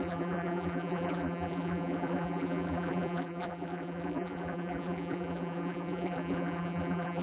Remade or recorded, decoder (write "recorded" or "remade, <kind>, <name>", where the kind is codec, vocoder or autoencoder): remade, vocoder, BigVGAN v2